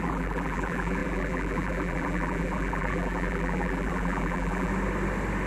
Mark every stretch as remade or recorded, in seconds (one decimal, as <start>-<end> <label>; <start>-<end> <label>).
0.0-4.7 remade; 4.7-5.5 recorded

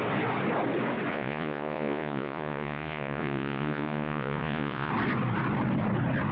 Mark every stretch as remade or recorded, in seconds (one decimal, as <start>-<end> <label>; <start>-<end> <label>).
0.0-1.1 recorded; 1.1-4.9 remade; 4.9-6.3 recorded

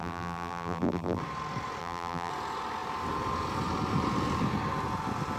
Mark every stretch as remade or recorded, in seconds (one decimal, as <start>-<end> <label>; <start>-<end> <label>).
0.0-1.2 remade; 1.2-1.8 recorded; 1.8-2.3 remade; 2.3-5.4 recorded